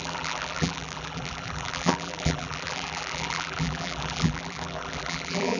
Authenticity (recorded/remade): remade